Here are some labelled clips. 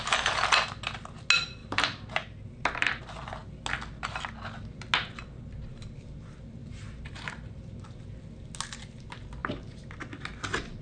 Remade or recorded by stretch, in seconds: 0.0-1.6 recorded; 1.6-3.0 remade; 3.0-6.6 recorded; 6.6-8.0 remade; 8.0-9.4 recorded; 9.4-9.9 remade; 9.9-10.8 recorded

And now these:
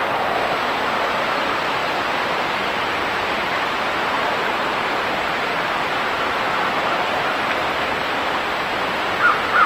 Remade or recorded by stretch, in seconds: 0.0-1.8 recorded; 1.8-2.9 remade; 2.9-3.4 recorded; 3.4-7.4 remade; 7.4-9.7 recorded

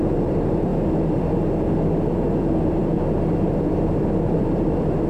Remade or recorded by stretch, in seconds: 0.0-0.7 remade; 0.7-2.6 recorded; 2.6-5.1 remade

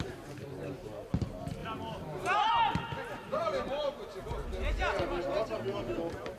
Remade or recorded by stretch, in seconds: 0.0-1.6 recorded; 1.6-2.5 remade; 2.5-3.0 recorded; 3.0-4.7 remade; 4.7-6.4 recorded